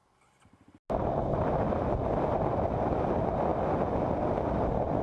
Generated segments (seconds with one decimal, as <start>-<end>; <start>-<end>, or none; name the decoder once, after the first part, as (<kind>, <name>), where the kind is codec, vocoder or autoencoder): none